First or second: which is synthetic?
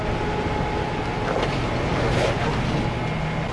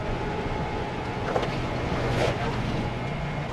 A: second